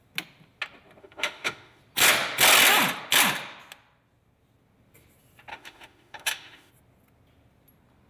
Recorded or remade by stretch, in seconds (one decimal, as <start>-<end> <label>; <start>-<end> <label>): 0.0-1.0 recorded; 1.0-1.8 remade; 1.8-5.5 recorded; 5.5-6.7 remade; 6.7-8.1 recorded